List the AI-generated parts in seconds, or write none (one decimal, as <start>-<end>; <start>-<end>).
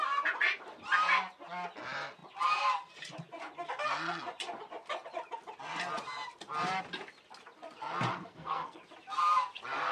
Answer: 8.1-8.8